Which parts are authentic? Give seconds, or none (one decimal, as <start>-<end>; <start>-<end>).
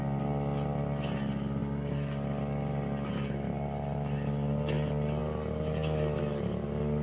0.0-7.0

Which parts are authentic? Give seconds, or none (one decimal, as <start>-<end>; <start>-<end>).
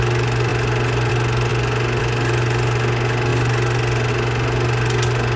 0.0-5.4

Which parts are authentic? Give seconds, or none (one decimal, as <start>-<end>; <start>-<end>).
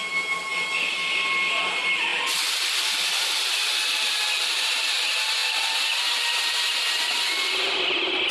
0.0-8.3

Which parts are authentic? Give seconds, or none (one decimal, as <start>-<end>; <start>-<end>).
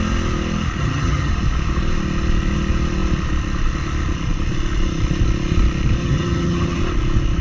0.0-0.8; 1.3-6.0; 6.8-7.4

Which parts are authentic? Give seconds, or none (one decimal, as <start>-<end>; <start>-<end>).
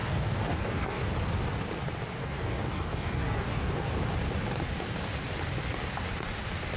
1.1-2.2; 3.9-6.8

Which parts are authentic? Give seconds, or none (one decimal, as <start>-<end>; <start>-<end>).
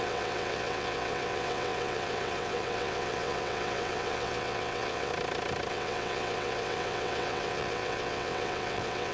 5.1-5.7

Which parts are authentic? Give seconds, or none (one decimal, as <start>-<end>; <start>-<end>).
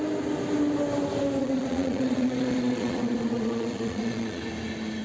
0.0-1.4; 4.4-5.0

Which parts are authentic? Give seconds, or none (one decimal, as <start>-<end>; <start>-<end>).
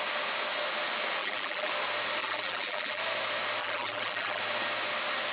0.0-1.2; 1.7-2.2; 3.0-3.6; 4.4-5.3